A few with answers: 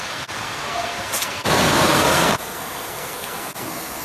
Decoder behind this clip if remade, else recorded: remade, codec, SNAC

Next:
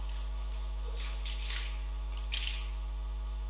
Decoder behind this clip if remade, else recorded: recorded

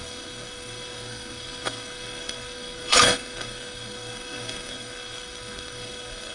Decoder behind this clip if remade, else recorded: remade, codec, SNAC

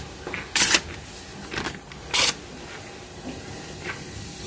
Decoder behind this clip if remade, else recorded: recorded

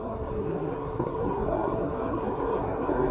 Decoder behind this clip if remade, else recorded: remade, codec, SNAC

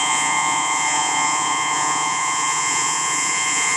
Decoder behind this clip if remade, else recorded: remade, vocoder, Vocos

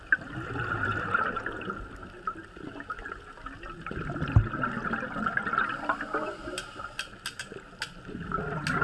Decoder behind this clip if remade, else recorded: recorded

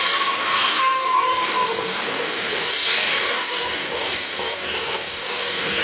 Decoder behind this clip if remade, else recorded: remade, codec, DAC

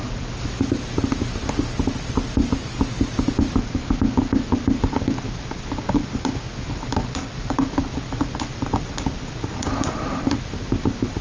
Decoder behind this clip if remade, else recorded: recorded